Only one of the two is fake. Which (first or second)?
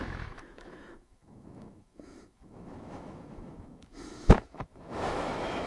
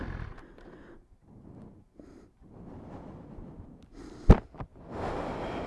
first